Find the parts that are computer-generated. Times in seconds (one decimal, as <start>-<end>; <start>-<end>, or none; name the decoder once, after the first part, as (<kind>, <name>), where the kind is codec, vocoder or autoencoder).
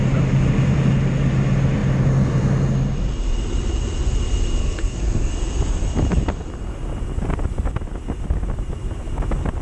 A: 4.6-5.3 (codec, SNAC)